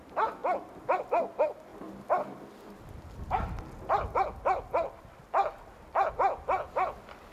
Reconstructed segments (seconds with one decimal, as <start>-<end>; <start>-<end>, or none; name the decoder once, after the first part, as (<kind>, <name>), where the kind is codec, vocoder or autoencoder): none